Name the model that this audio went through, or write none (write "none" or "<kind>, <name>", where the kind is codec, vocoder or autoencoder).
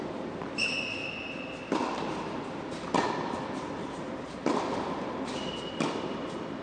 none